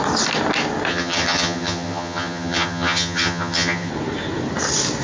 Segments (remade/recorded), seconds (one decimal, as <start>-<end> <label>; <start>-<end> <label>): 0.0-0.9 recorded; 0.9-3.9 remade; 3.9-5.0 recorded